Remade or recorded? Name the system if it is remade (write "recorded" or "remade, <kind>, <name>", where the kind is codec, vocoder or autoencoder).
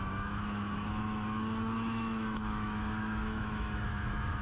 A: remade, autoencoder, DAC-VAE